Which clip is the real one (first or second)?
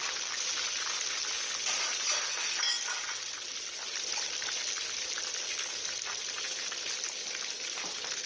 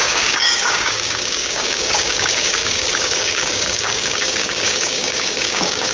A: first